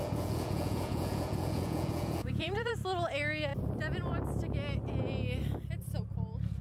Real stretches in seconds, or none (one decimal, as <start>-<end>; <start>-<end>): 2.7-6.6